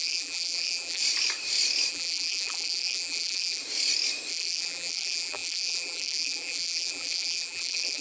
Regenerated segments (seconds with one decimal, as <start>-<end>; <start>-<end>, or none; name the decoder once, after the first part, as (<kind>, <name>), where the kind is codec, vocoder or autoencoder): 0.0-1.0 (vocoder, BigVGAN v2); 1.9-3.6; 4.3-8.0